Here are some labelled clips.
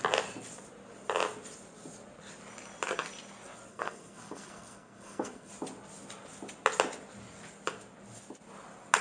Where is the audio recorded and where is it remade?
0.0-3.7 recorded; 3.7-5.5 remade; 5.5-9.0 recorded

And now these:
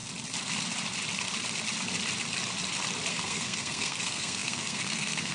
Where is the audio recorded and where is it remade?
0.0-3.1 recorded; 3.1-5.3 remade